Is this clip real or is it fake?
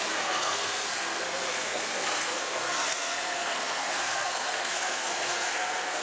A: fake